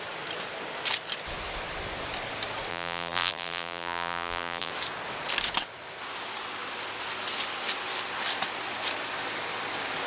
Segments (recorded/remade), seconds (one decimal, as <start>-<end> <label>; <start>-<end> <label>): 0.0-2.7 recorded; 2.7-4.7 remade; 4.7-10.1 recorded